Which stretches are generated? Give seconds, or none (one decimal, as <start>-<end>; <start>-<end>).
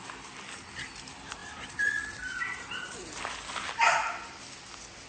none